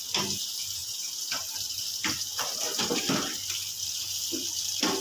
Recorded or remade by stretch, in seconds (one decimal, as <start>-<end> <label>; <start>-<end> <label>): 0.0-5.0 recorded